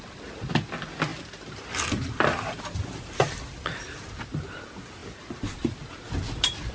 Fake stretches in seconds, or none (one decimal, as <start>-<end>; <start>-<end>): none